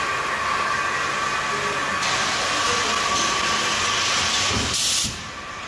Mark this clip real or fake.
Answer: real